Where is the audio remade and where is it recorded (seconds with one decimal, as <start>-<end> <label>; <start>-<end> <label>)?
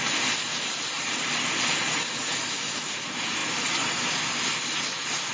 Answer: 0.0-0.5 recorded; 0.5-1.2 remade; 1.2-5.3 recorded